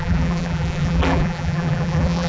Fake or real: fake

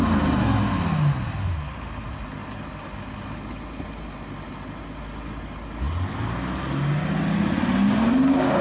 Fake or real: real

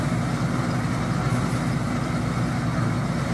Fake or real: real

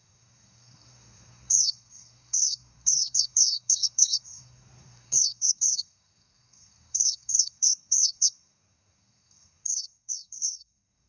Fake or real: fake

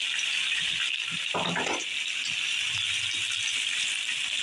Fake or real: real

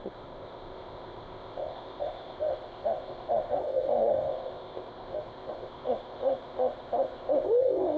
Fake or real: fake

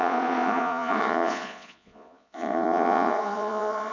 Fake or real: fake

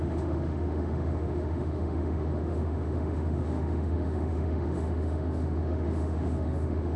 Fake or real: fake